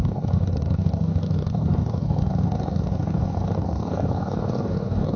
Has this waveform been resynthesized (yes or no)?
yes